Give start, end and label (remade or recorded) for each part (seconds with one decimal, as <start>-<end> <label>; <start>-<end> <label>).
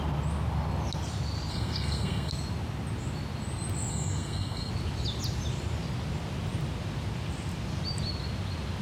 0.0-1.5 recorded; 1.5-2.3 remade; 2.3-3.9 recorded; 3.9-4.7 remade; 4.7-8.8 recorded